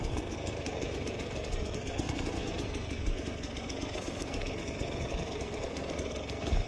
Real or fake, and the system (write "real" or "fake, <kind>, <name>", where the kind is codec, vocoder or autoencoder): fake, codec, SNAC